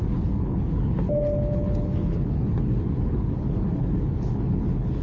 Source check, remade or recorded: remade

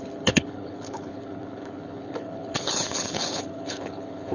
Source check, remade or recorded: remade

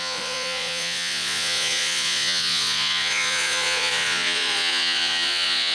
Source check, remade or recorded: remade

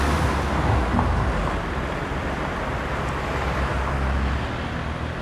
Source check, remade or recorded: recorded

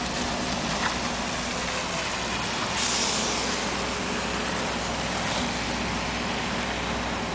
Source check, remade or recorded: recorded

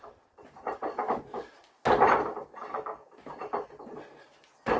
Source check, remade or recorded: recorded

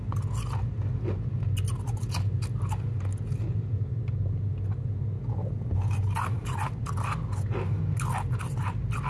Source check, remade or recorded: recorded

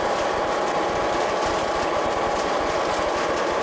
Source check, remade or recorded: remade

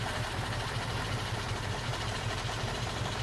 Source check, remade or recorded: remade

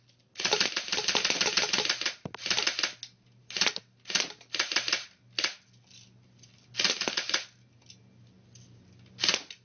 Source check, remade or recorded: recorded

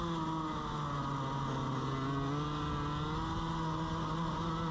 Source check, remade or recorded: recorded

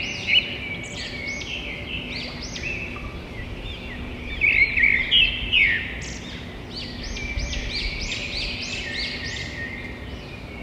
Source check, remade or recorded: recorded